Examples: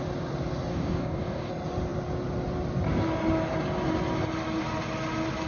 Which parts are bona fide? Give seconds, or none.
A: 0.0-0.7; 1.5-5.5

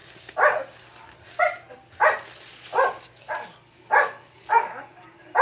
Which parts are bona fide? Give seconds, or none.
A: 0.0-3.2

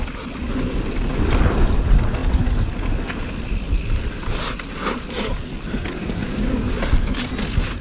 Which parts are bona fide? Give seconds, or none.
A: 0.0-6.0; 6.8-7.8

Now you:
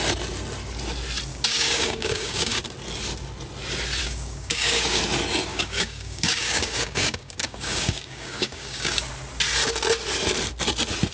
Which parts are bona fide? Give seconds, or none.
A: 0.0-1.3; 2.6-4.0; 5.0-5.5; 9.1-11.1